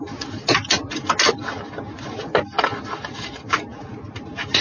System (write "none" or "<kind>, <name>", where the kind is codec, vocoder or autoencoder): none